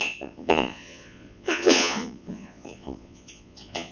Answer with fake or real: fake